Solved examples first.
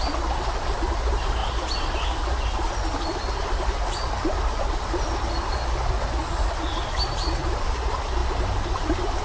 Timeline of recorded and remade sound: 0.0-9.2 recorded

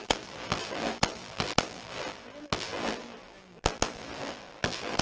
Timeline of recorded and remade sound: 0.0-5.0 remade

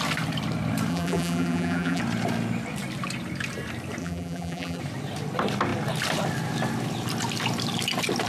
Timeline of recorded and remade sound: 0.0-0.9 recorded; 0.9-2.0 remade; 2.0-4.0 recorded; 4.0-4.8 remade; 4.8-8.3 recorded

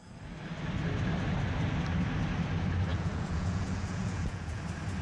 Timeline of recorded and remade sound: 0.0-2.9 recorded; 2.9-4.6 remade; 4.6-5.0 recorded

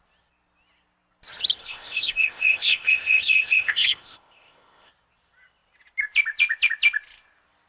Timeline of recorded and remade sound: 0.0-1.6 recorded; 1.6-4.9 remade; 4.9-7.7 recorded

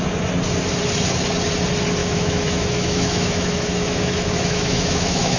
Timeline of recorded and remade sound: 0.0-2.0 recorded; 2.0-5.4 remade

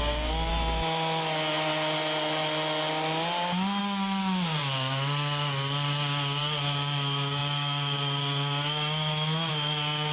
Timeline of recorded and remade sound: 0.0-0.5 remade; 0.5-3.8 recorded; 3.8-10.1 remade

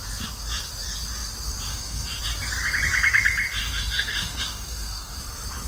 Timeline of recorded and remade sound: 0.0-1.7 recorded; 1.7-2.2 remade; 2.2-3.6 recorded; 3.6-5.2 remade; 5.2-5.7 recorded